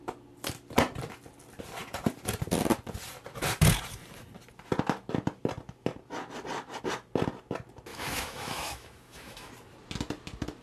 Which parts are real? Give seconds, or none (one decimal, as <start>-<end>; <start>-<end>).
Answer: 0.0-7.9; 9.5-10.6

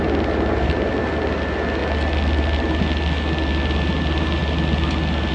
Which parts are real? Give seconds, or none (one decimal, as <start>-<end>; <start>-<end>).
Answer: 0.0-5.3